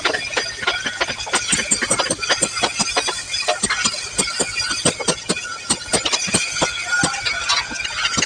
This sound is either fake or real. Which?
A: real